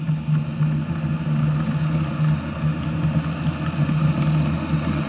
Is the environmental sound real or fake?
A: real